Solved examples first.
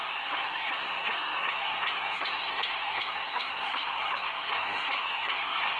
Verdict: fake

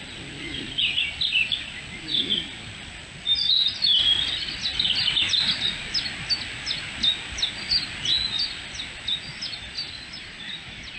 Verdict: real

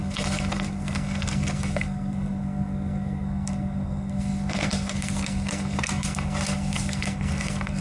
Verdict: fake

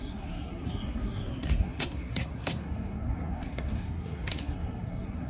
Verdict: fake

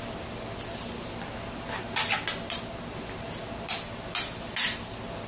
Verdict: real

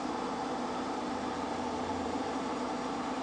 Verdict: fake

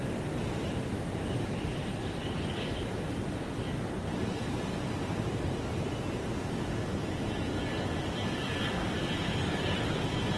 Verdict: fake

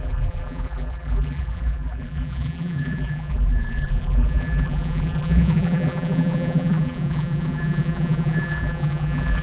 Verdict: fake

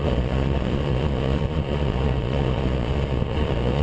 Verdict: fake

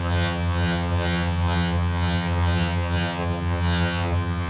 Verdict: fake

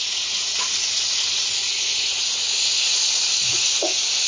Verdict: fake